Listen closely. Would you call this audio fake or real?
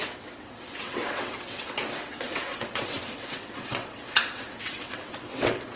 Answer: fake